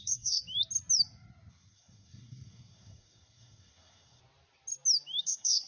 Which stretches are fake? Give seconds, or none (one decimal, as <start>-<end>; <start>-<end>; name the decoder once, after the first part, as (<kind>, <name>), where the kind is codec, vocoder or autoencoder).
0.0-0.4 (codec, SNAC); 1.5-4.2; 5.2-5.7